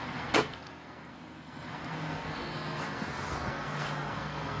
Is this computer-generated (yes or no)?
yes